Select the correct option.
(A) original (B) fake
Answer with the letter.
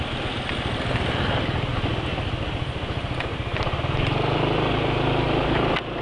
A